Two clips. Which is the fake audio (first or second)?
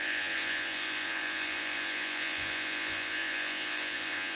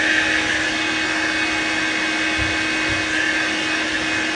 first